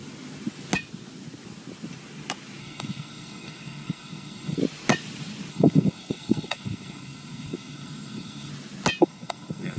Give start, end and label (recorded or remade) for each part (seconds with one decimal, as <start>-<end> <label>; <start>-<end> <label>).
0.0-2.6 recorded; 2.6-4.6 remade; 4.6-5.5 recorded; 5.5-8.5 remade; 8.5-9.0 recorded; 9.0-9.8 remade

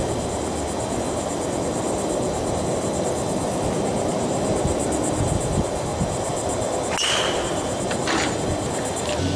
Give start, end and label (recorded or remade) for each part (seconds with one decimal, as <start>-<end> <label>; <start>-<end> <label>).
0.0-9.4 recorded

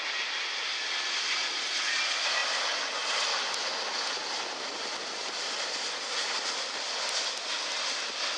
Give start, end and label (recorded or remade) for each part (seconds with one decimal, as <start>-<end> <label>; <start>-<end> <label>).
0.0-8.4 recorded

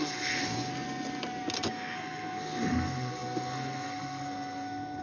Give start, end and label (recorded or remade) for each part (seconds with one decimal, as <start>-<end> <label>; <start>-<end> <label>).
0.0-0.7 remade; 0.7-1.7 recorded; 1.7-5.0 remade

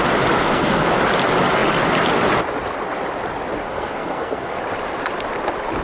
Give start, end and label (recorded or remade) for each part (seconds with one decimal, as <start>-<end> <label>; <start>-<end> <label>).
0.0-0.4 recorded; 0.4-0.9 remade; 0.9-3.7 recorded; 3.7-4.6 remade; 4.6-5.8 recorded